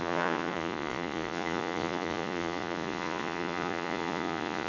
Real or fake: fake